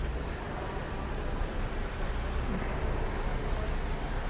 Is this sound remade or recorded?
recorded